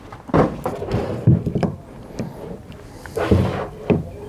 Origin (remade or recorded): remade